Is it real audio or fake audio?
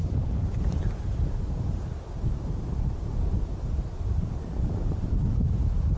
fake